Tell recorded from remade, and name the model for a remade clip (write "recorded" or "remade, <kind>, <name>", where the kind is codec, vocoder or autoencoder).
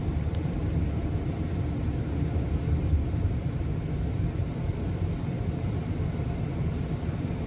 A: remade, vocoder, BigVGAN v2